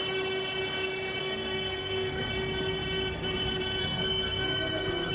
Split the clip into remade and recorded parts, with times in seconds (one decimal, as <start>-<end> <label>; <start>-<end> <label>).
0.0-1.2 recorded; 1.2-2.3 remade; 2.3-3.8 recorded; 3.8-5.1 remade